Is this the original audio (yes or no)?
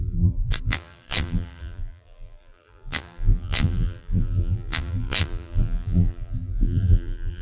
no